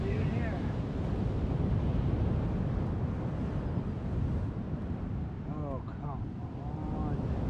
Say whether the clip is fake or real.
real